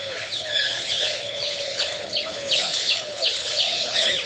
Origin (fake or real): fake